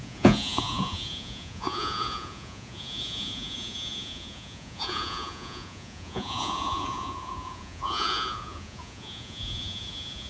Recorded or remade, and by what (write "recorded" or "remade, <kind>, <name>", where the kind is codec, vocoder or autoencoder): remade, vocoder, Vocos